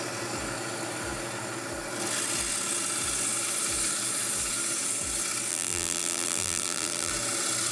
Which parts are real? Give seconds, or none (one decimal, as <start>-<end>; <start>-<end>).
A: 0.0-5.5; 7.1-7.7